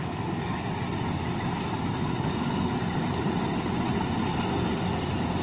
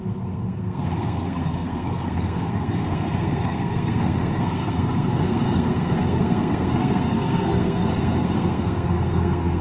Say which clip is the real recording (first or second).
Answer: first